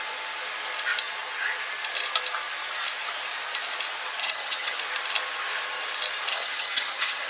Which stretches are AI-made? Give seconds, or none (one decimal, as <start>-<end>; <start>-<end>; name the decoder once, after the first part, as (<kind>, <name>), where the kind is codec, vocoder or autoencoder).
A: 4.2-4.8 (vocoder, HiFi-GAN); 6.3-7.3